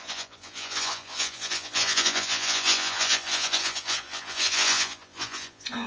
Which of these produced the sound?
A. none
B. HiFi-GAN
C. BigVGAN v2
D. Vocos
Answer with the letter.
D